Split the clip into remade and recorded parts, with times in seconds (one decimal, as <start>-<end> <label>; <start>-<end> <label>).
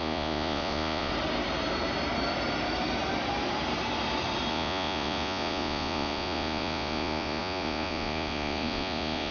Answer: 0.0-1.1 remade; 1.1-4.5 recorded; 4.5-9.3 remade